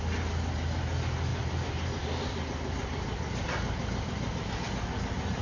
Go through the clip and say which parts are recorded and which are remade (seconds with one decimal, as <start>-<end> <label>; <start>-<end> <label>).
0.0-1.3 recorded; 1.3-4.5 remade; 4.5-5.4 recorded